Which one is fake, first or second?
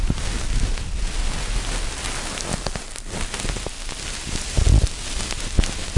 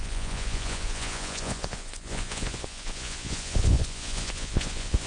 second